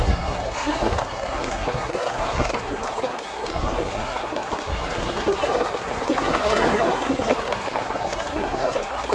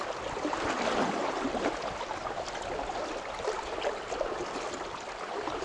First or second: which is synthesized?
first